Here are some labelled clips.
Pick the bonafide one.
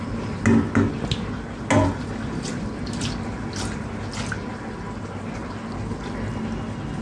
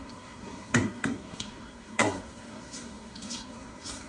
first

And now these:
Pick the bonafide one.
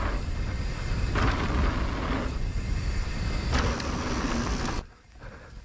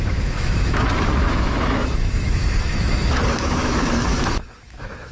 first